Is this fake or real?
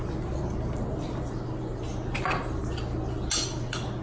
real